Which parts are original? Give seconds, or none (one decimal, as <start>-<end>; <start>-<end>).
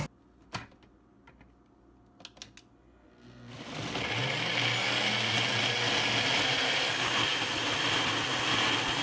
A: 0.0-9.0